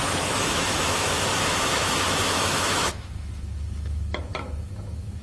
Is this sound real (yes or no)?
no